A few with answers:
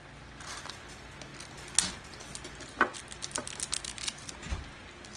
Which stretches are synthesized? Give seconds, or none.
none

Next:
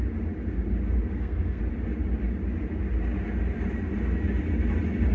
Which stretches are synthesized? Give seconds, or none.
1.1-1.6